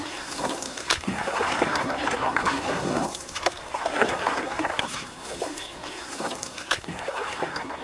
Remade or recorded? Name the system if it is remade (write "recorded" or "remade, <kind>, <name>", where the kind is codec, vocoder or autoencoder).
remade, codec, SNAC